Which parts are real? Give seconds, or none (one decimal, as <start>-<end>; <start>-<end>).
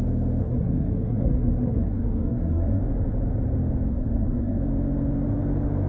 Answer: 0.0-0.4; 2.8-3.9; 4.6-5.9